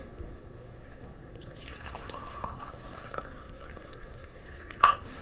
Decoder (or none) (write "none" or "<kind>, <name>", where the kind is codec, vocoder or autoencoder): codec, SNAC